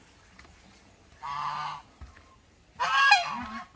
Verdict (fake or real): real